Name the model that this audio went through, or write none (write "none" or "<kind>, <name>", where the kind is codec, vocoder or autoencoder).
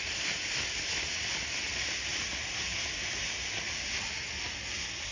none